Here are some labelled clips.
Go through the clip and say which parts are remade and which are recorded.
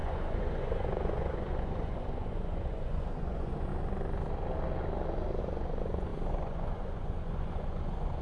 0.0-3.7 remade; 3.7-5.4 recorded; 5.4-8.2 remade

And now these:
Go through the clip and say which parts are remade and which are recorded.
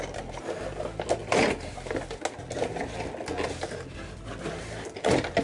0.0-5.4 recorded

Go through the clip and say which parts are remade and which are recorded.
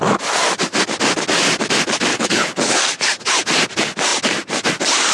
0.0-2.1 recorded; 2.1-2.8 remade; 2.8-5.1 recorded